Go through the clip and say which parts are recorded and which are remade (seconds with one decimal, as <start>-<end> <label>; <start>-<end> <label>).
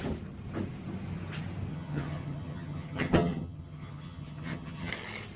0.0-1.7 recorded; 1.7-4.9 remade; 4.9-5.4 recorded